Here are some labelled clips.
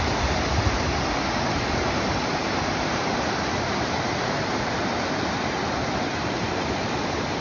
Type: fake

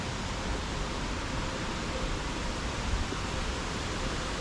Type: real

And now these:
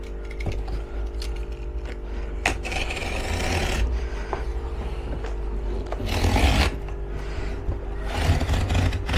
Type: real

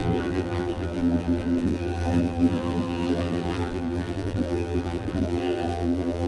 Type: fake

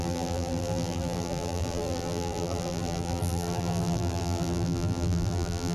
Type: fake